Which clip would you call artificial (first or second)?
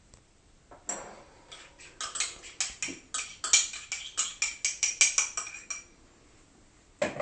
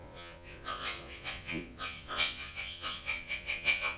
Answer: second